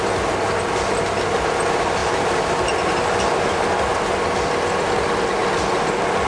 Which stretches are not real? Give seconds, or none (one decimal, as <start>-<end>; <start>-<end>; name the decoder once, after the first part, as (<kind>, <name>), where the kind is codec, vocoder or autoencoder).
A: none